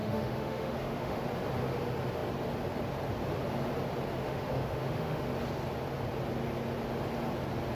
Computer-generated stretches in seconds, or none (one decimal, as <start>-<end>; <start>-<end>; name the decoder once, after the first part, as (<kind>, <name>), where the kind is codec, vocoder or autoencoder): 0.0-1.2 (autoencoder, DAC-VAE); 4.2-5.3